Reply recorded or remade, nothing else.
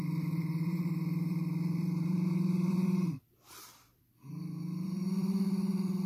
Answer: remade